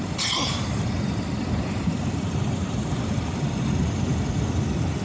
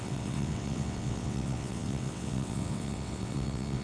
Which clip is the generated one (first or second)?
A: second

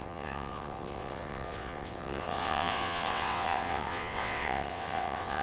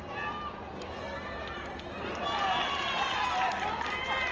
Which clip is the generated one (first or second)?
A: first